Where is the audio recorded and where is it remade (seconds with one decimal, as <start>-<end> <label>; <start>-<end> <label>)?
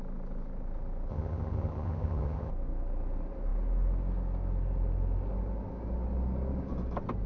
0.0-1.1 recorded; 1.1-2.5 remade; 2.5-7.3 recorded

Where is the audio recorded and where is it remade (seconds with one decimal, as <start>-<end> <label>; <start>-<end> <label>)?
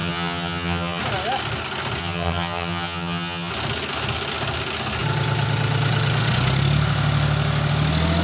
0.0-1.0 remade; 1.0-2.0 recorded; 2.0-3.5 remade; 3.5-8.2 recorded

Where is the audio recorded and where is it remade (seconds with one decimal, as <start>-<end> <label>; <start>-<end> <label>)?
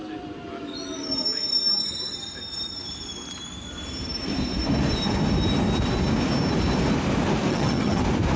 0.0-7.5 recorded; 7.5-8.0 remade; 8.0-8.4 recorded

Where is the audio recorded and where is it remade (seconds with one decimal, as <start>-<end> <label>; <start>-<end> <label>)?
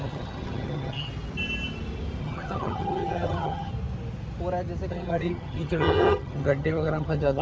0.0-1.1 remade; 1.1-2.2 recorded; 2.2-3.7 remade; 3.7-4.9 recorded; 4.9-7.4 remade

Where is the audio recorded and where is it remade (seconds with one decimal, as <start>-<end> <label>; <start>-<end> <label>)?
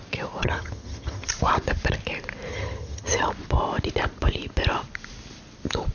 0.0-0.4 recorded; 0.4-1.3 remade; 1.3-2.5 recorded; 2.5-3.3 remade; 3.3-5.9 recorded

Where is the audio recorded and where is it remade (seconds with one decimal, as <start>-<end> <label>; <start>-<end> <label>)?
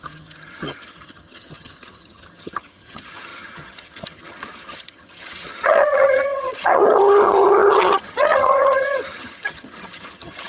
0.0-10.5 remade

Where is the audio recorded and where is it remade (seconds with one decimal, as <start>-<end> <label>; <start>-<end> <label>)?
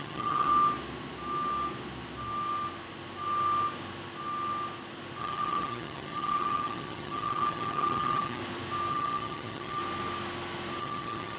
0.0-0.5 remade; 0.5-5.2 recorded; 5.2-8.4 remade; 8.4-8.9 recorded; 8.9-9.8 remade; 9.8-10.8 recorded; 10.8-11.4 remade